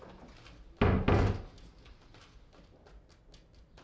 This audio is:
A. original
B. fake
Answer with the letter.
A